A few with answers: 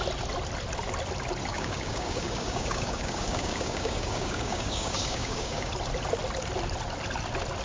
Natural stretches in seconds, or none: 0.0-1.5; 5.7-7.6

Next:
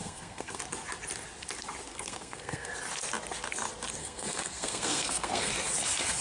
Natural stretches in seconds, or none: 0.6-1.9; 2.7-4.0; 5.5-6.2